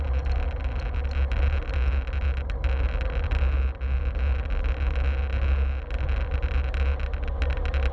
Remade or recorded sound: recorded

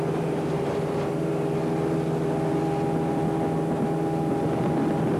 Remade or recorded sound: recorded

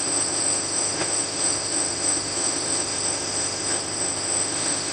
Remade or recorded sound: remade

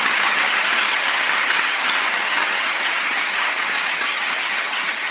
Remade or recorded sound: remade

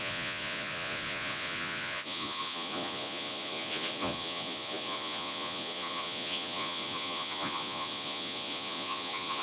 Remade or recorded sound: remade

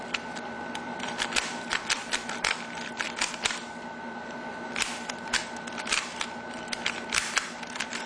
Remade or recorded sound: remade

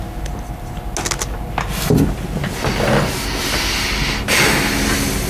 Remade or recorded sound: recorded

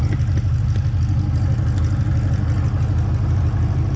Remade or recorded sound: recorded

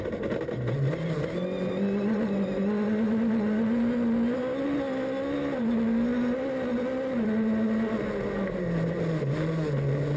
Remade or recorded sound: recorded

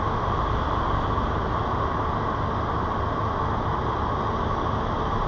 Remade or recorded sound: recorded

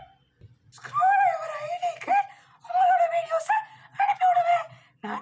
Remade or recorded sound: recorded